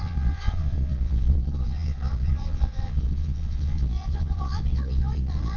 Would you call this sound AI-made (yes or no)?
yes